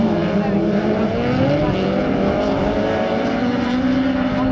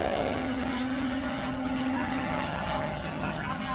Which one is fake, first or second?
second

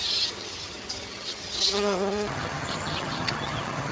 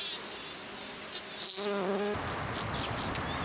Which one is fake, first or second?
first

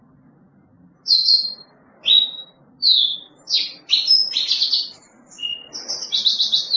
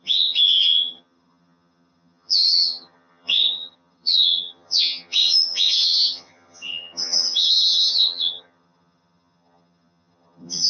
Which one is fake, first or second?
second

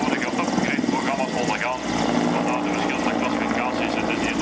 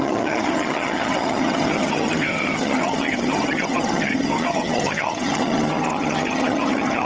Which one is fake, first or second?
second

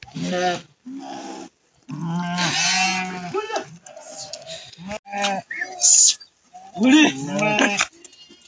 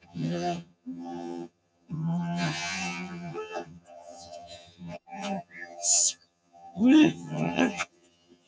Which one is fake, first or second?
second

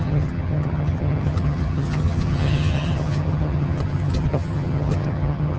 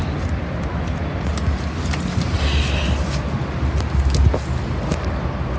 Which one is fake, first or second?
first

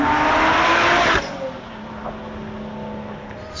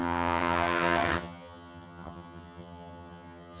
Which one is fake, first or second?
second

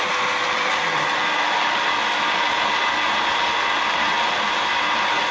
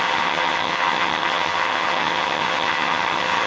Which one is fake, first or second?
second